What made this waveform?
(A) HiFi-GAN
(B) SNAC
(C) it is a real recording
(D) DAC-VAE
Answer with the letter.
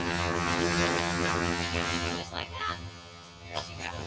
A